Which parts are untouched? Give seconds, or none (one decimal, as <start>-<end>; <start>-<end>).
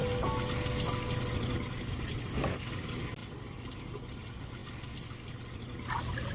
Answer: 0.0-6.3